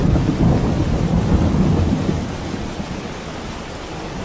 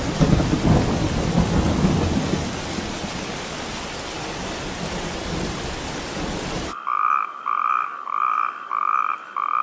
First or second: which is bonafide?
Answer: second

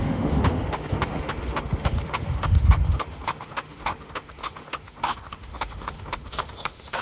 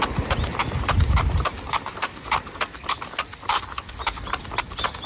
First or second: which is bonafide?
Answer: second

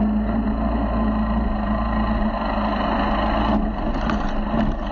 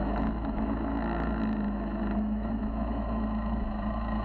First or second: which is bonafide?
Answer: first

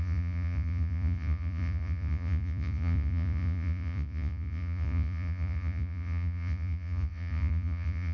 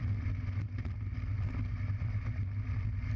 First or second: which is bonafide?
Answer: second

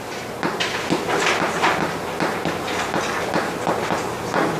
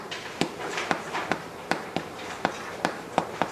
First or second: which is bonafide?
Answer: first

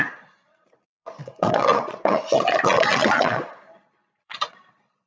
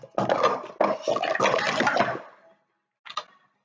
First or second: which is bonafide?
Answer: second